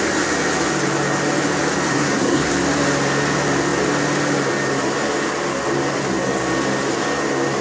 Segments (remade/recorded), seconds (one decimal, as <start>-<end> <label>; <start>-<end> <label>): 0.0-1.9 recorded; 1.9-2.5 remade; 2.5-7.6 recorded